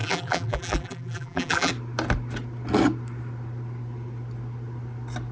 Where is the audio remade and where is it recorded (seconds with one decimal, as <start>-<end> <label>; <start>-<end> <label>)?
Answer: 0.0-1.7 remade; 1.7-5.3 recorded